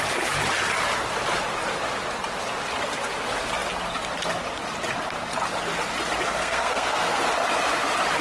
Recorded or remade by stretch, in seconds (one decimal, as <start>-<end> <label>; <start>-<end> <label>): 0.0-6.4 recorded; 6.4-7.2 remade; 7.2-8.2 recorded